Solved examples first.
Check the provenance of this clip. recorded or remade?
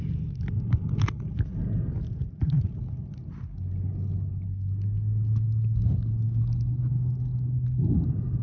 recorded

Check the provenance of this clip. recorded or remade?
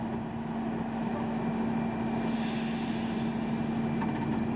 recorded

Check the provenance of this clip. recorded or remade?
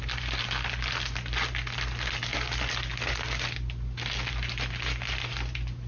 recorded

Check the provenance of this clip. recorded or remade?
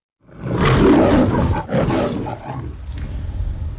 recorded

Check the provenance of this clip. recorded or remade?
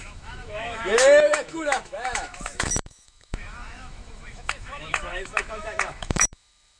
remade